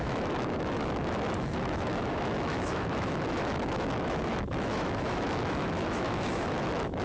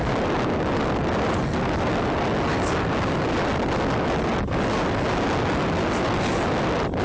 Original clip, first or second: second